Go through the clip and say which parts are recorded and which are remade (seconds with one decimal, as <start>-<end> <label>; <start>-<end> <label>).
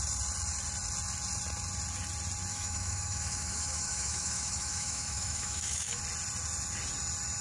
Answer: 0.0-2.5 recorded; 2.5-6.0 remade; 6.0-7.4 recorded